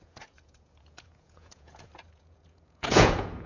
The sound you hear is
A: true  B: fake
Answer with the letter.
B